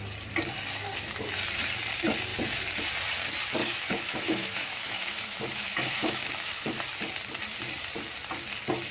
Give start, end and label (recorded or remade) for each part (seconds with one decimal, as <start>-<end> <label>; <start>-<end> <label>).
0.0-3.6 recorded; 3.6-6.8 remade; 6.8-8.9 recorded